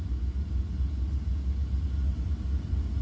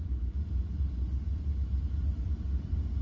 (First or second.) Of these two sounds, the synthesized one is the second